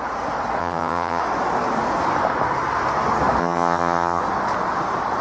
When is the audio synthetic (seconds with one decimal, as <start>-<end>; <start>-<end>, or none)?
0.6-1.2; 3.4-4.2